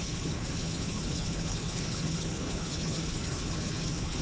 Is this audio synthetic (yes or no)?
yes